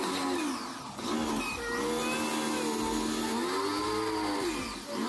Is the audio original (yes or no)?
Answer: yes